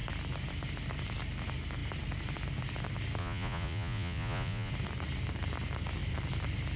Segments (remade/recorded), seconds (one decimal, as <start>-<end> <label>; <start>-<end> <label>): 0.0-3.2 recorded; 3.2-4.7 remade; 4.7-6.8 recorded